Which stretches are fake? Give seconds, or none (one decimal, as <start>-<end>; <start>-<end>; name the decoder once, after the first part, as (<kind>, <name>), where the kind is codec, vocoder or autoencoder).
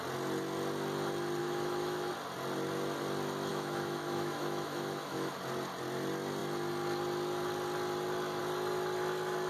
1.4-2.1 (autoencoder, DAC-VAE); 3.5-5.3